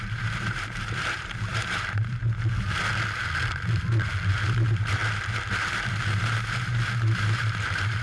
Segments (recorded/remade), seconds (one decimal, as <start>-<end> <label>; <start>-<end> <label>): 0.0-2.2 remade; 2.2-4.3 recorded; 4.3-5.0 remade; 5.0-5.9 recorded; 5.9-8.0 remade